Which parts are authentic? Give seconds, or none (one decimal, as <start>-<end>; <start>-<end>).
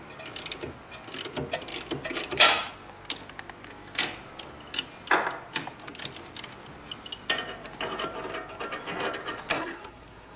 0.0-9.5